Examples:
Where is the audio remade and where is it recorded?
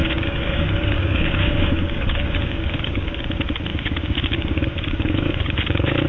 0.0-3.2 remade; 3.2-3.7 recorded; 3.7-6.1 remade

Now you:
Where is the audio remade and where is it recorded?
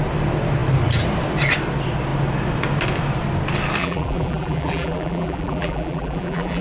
0.0-3.8 recorded; 3.8-6.6 remade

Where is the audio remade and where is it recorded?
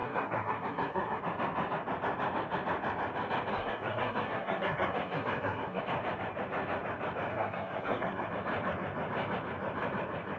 0.0-1.2 remade; 1.2-3.5 recorded; 3.5-5.8 remade; 5.8-7.3 recorded; 7.3-8.3 remade; 8.3-10.4 recorded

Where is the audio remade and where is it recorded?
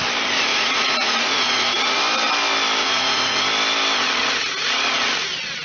0.0-0.5 recorded; 0.5-2.0 remade; 2.0-2.8 recorded; 2.8-3.4 remade; 3.4-5.6 recorded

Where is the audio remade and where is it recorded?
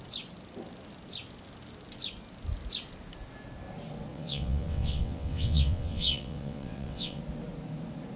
0.0-4.1 recorded; 4.1-7.2 remade; 7.2-8.2 recorded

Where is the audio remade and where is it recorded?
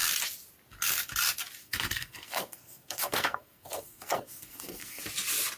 0.0-1.6 recorded; 1.6-5.0 remade; 5.0-5.6 recorded